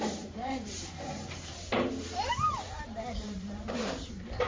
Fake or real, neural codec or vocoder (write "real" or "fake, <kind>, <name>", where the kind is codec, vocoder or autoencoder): fake, vocoder, BigVGAN v2